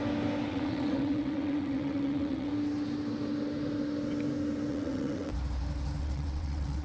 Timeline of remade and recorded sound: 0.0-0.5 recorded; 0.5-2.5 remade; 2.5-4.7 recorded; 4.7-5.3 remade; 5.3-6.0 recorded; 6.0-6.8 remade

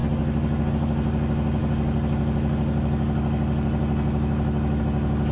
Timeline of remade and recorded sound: 0.0-5.3 recorded

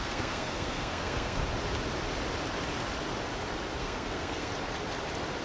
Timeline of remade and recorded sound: 0.0-1.4 remade; 1.4-3.8 recorded; 3.8-4.5 remade; 4.5-5.4 recorded

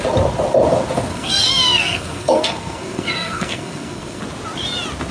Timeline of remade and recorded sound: 0.0-1.1 recorded; 1.1-4.2 remade; 4.2-5.1 recorded

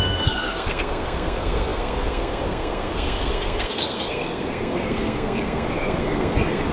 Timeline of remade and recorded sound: 0.0-6.7 remade